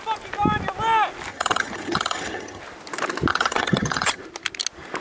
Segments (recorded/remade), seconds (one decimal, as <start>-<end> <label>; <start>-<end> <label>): 0.0-1.3 recorded; 1.3-2.6 remade; 2.6-3.3 recorded; 3.3-4.2 remade; 4.2-5.0 recorded